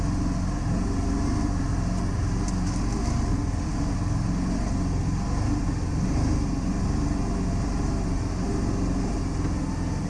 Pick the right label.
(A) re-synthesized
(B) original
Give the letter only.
B